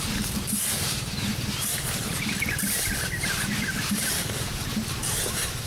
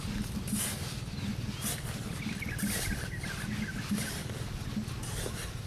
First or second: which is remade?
first